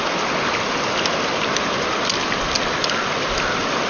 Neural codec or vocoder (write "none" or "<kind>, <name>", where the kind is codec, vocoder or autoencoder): none